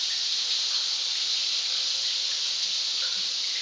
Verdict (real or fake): real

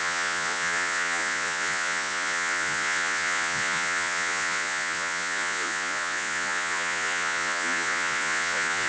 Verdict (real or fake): fake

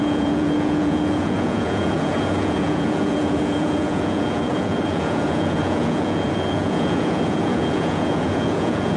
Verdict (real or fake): fake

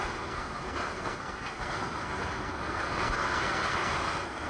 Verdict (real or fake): fake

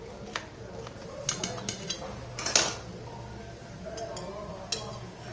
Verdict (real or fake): real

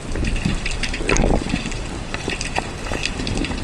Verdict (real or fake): real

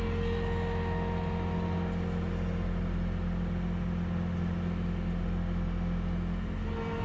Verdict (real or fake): real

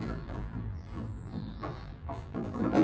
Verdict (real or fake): fake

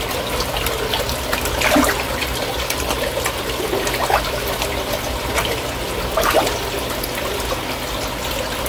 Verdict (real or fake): real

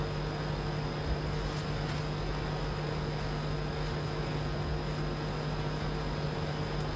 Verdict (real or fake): real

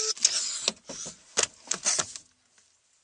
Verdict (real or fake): real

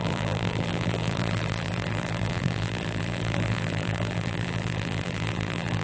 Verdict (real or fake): fake